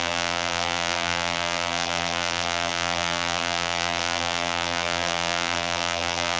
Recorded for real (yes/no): no